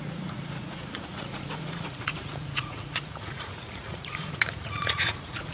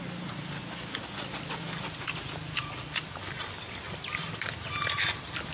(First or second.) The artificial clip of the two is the first